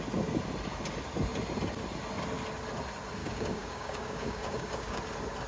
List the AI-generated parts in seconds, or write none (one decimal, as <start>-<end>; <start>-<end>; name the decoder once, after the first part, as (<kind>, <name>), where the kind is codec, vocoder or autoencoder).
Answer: 3.2-5.0 (codec, DAC)